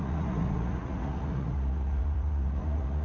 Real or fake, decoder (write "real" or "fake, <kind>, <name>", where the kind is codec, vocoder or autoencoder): fake, vocoder, Vocos